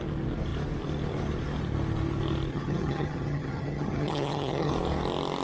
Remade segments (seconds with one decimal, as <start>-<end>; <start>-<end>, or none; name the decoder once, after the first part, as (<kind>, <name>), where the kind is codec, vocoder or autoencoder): 2.5-4.7 (vocoder, HiFi-GAN)